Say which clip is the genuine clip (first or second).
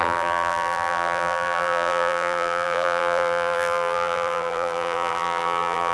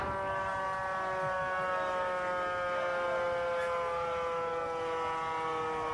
second